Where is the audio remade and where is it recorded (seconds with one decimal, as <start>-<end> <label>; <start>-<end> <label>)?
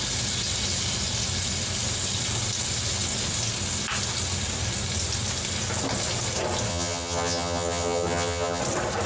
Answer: 0.0-6.7 recorded; 6.7-8.6 remade; 8.6-9.1 recorded